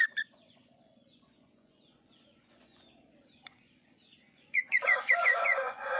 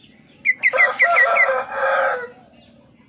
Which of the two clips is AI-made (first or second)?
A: first